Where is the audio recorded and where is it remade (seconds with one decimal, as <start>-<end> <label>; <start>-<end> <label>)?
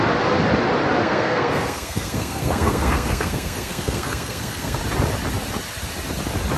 0.0-1.0 recorded; 1.0-4.8 remade; 4.8-6.6 recorded